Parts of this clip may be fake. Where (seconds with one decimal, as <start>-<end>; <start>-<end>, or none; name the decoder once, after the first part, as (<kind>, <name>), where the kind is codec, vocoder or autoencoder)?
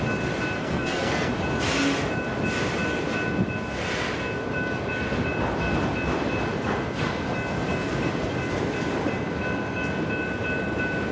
0.6-1.3 (codec, SNAC)